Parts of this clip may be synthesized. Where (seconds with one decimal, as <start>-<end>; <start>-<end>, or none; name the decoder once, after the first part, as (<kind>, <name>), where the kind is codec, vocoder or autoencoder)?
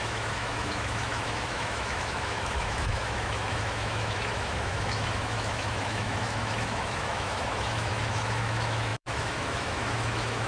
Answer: 0.0-10.5 (autoencoder, DAC-VAE)